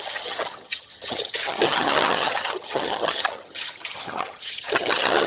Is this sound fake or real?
fake